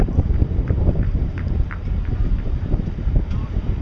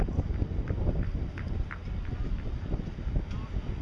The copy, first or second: first